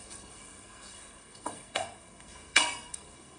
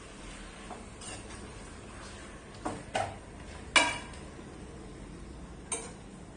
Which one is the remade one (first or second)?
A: first